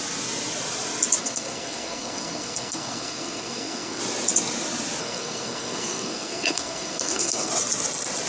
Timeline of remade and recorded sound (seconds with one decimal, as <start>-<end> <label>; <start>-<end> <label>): 0.0-1.2 recorded; 1.2-4.0 remade; 4.0-5.0 recorded; 5.0-7.5 remade; 7.5-8.3 recorded